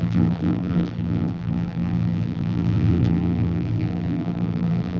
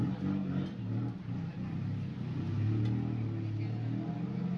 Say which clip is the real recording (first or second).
second